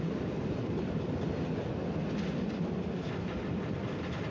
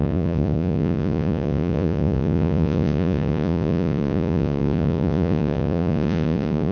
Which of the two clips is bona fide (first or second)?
first